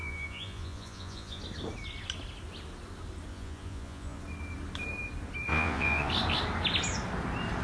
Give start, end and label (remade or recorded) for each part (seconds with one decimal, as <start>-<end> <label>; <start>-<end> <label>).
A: 0.0-1.4 remade; 1.4-3.3 recorded; 3.3-4.2 remade; 4.2-5.5 recorded; 5.5-6.1 remade; 6.1-7.6 recorded